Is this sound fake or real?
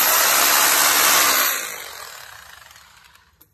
real